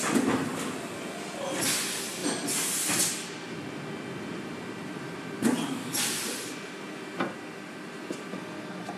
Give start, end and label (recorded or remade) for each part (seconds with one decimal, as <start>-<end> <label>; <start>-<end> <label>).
0.0-9.0 recorded